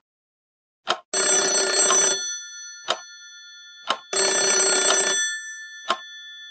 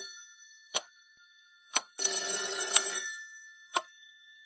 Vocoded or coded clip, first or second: second